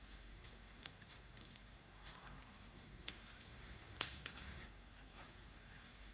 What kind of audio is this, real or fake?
fake